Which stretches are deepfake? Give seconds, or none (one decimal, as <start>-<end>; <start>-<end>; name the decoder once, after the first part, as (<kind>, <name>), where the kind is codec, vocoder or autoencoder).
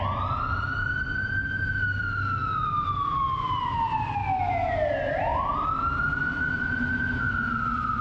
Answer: none